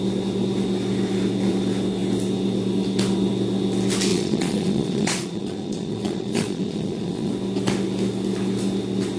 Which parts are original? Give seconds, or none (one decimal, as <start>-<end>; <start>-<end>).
0.0-4.1; 7.3-9.2